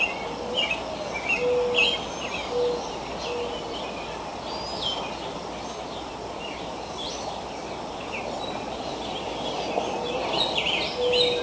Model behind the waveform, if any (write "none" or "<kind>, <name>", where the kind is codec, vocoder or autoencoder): none